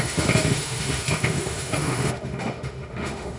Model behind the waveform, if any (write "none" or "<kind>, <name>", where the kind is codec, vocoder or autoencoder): autoencoder, DAC-VAE